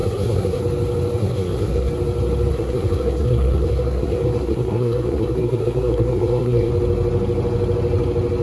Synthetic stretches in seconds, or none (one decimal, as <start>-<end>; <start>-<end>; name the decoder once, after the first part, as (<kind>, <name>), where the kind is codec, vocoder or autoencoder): 0.0-0.6 (codec, SNAC); 1.2-1.9; 2.5-6.7